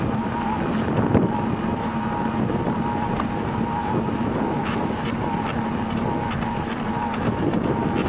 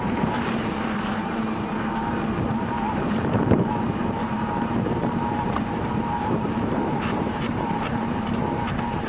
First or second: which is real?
first